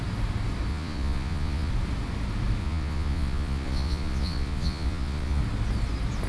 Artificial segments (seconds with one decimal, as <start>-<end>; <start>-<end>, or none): 0.7-1.7; 2.6-5.4